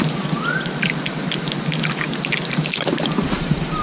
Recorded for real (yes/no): yes